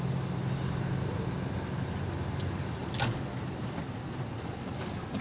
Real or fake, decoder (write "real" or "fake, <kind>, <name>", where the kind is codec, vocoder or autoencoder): real